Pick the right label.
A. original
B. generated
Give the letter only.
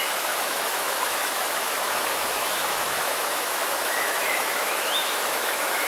B